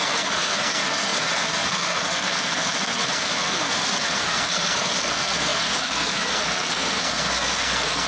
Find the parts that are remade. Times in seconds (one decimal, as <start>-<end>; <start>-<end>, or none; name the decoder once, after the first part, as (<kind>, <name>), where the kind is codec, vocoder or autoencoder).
0.0-8.1 (codec, SNAC)